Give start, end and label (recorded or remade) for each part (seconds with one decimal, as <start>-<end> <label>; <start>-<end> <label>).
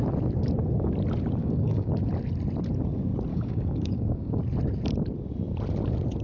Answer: 0.0-1.4 recorded; 1.4-1.9 remade; 1.9-3.3 recorded; 3.3-4.4 remade; 4.4-6.2 recorded